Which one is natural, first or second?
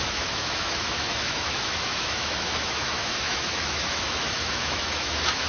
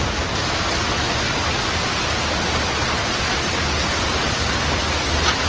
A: second